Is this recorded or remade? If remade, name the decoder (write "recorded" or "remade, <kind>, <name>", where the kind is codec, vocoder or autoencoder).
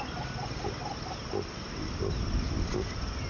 recorded